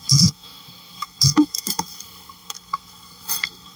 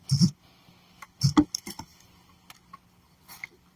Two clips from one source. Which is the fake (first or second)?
first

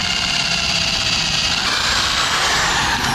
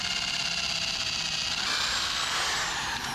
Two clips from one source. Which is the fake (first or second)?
first